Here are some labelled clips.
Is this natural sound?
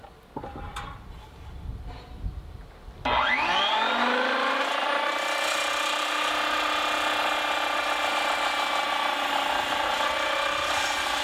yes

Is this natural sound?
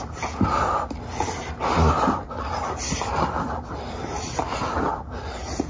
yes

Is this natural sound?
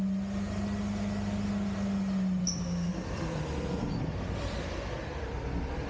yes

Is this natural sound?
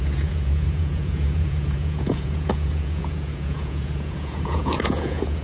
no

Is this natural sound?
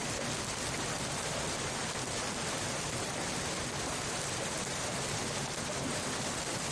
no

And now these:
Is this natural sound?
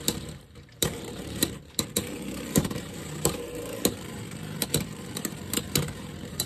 no